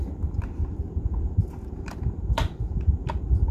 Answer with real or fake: fake